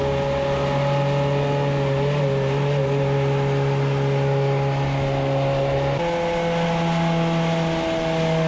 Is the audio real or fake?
real